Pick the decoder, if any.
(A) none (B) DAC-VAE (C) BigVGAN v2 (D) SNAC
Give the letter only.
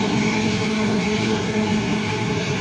D